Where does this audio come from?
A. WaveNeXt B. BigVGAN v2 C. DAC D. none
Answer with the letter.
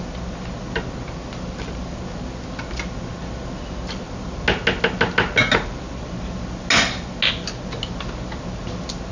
D